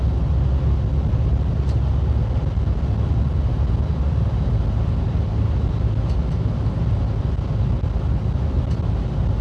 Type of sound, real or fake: real